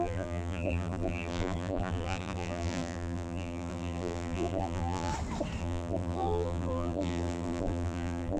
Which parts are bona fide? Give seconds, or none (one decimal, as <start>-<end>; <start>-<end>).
5.1-5.6